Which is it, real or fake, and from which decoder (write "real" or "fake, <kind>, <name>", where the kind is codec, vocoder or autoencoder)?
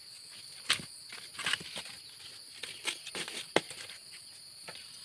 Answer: real